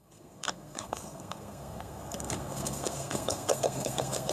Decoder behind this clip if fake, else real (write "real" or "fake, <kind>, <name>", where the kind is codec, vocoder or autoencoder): fake, codec, SNAC